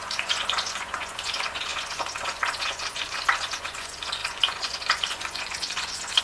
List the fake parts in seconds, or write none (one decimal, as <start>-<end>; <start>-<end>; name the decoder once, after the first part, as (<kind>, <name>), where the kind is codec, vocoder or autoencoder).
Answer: 0.0-6.2 (vocoder, Vocos)